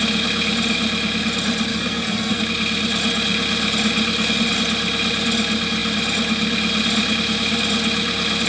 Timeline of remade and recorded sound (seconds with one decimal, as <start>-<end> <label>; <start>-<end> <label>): 0.0-1.7 recorded; 1.7-2.4 remade; 2.4-8.5 recorded